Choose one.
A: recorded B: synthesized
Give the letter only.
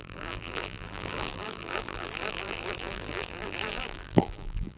B